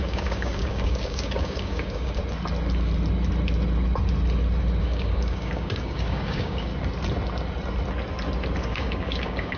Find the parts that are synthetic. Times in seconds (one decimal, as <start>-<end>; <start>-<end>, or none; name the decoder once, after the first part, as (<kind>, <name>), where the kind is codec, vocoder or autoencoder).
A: 0.0-2.2 (codec, DAC); 4.8-6.7; 8.6-9.6